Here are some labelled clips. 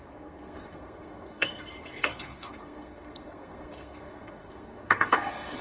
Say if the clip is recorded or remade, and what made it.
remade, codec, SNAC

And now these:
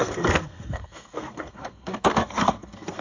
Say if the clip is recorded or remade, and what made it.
remade, codec, SNAC